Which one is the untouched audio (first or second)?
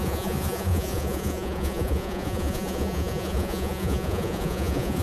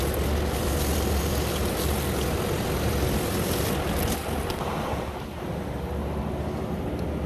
second